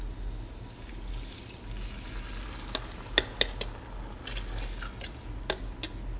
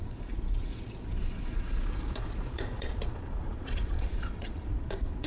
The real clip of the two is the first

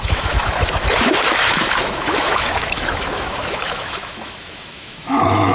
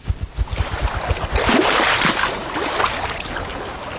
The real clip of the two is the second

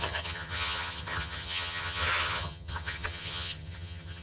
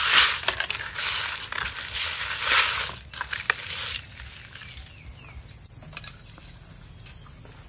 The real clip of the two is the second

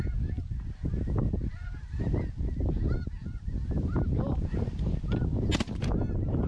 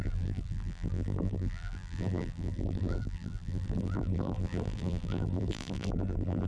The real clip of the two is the first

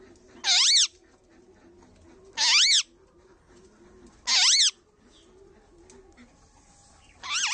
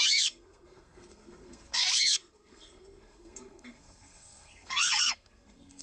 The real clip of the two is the first